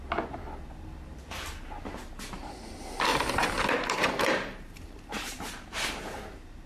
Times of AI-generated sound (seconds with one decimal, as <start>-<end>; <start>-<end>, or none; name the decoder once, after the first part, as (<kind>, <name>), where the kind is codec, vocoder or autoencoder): 3.1-6.2 (vocoder, BigVGAN v2)